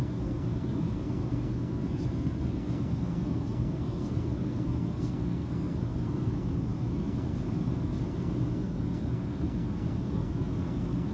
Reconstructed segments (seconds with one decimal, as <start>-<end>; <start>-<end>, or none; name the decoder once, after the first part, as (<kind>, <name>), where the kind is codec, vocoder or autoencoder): 0.0-11.1 (codec, SNAC)

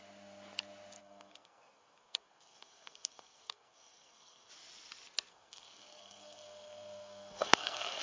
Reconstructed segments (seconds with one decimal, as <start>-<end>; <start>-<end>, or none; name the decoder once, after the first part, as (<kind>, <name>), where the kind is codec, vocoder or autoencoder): 1.0-4.5 (codec, SNAC); 5.3-8.0

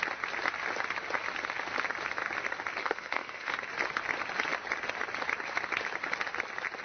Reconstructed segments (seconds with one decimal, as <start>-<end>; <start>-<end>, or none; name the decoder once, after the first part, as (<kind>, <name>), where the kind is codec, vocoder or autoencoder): 2.8-3.5 (codec, SNAC)

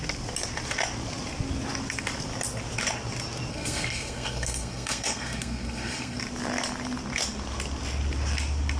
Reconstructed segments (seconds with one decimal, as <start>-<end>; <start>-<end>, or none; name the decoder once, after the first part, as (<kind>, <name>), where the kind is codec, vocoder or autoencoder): 3.5-6.2 (codec, SNAC)

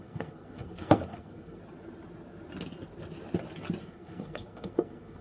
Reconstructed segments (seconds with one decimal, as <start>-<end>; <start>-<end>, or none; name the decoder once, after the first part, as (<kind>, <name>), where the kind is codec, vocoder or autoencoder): 0.0-1.6 (codec, SNAC); 3.8-5.2

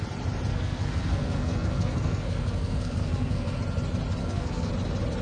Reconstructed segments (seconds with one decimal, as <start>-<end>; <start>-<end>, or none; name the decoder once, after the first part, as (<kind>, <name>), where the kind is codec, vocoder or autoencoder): 0.5-3.6 (codec, SNAC); 4.2-4.7

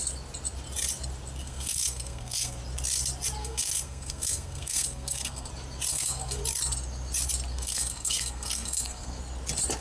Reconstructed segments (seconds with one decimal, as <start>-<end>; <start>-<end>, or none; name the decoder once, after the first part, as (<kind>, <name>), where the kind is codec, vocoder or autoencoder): 1.4-2.6 (codec, SNAC); 3.4-5.5; 5.9-6.4; 7.5-9.2

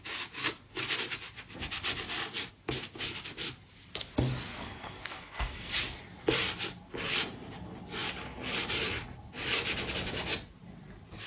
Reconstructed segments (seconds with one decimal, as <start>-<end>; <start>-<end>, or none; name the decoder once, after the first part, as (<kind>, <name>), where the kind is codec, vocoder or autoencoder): 4.5-5.7 (codec, SNAC)